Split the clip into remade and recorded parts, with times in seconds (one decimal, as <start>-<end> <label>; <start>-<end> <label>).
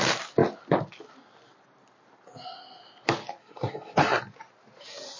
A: 0.0-3.4 recorded; 3.4-4.2 remade; 4.2-5.2 recorded